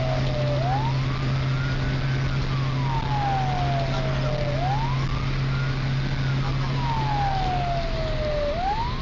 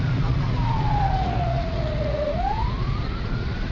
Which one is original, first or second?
first